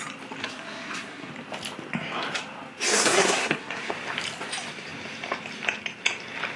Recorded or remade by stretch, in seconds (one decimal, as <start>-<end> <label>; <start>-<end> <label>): 0.0-0.4 recorded; 0.4-1.3 remade; 1.3-2.9 recorded; 2.9-3.9 remade; 3.9-6.6 recorded